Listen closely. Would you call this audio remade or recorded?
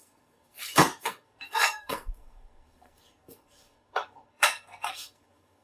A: remade